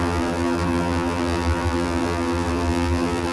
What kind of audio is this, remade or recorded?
remade